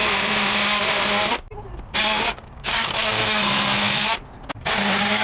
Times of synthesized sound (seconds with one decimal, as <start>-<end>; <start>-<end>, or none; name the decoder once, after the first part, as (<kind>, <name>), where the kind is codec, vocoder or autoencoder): 2.0-3.2 (codec, DAC); 4.5-5.2